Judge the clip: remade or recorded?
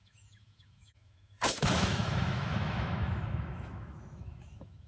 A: remade